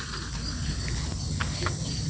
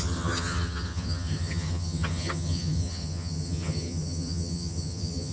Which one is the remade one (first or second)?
second